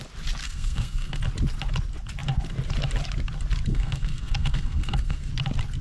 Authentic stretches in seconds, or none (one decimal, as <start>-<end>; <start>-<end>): 0.0-0.4; 1.2-3.7; 5.3-5.8